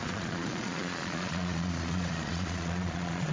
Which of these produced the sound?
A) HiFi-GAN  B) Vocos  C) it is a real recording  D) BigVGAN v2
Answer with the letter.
B